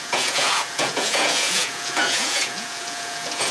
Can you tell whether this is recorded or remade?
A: remade